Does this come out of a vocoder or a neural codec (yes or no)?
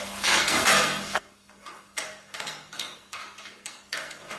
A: yes